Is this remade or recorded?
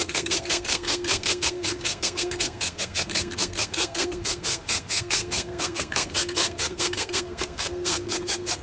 remade